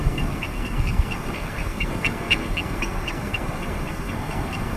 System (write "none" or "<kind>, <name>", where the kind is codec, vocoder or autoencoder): codec, SNAC